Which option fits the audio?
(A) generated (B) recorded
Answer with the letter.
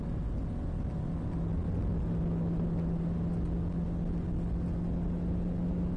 B